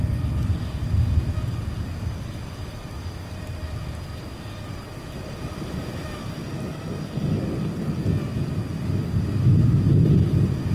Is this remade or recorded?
recorded